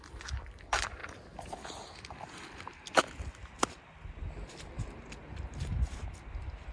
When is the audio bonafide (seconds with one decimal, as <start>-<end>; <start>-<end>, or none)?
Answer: 0.0-6.7